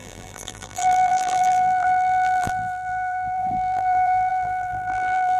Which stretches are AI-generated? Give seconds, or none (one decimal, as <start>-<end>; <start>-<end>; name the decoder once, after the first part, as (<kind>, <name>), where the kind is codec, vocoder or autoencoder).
0.0-5.4 (vocoder, BigVGAN v2)